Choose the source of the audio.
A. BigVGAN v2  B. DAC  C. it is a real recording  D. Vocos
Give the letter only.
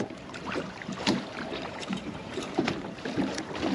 A